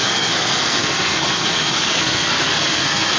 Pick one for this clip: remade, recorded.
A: remade